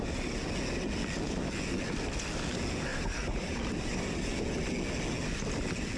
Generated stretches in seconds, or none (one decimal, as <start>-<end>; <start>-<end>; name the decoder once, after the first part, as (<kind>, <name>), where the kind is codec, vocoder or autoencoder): 2.9-3.7 (vocoder, BigVGAN v2)